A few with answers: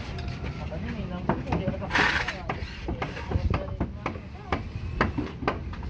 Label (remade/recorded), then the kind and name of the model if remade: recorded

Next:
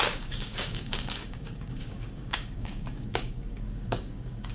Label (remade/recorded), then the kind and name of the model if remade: remade, codec, DAC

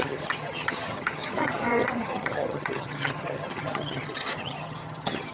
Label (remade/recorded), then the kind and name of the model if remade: remade, vocoder, HiFi-GAN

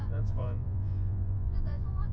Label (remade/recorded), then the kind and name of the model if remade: remade, vocoder, Vocos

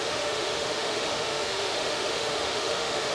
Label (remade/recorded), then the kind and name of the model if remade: remade, autoencoder, DAC-VAE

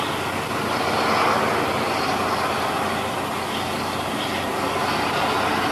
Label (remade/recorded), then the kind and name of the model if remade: recorded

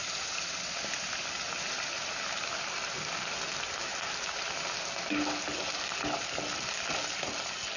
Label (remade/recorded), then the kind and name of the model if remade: recorded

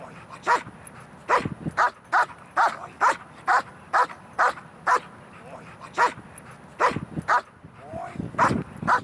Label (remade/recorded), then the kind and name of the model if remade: recorded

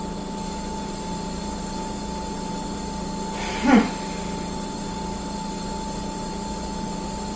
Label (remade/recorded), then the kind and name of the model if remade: recorded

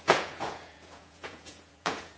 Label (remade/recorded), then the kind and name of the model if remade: remade, vocoder, Vocos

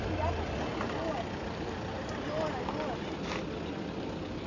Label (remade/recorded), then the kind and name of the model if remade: recorded